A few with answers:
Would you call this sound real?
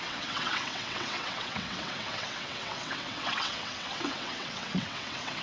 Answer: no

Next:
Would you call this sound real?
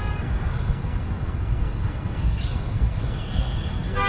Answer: no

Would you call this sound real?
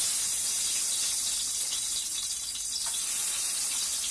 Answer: yes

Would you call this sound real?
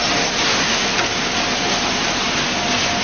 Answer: yes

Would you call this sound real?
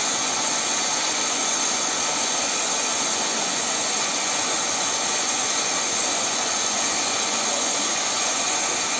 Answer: no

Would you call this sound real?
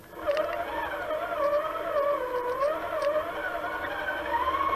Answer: yes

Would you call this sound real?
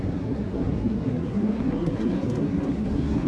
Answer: no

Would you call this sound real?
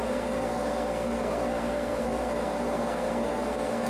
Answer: no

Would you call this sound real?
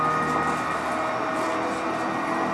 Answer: yes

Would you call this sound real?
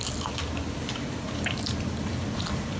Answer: yes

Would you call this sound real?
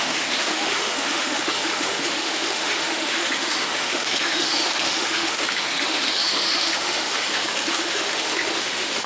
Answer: no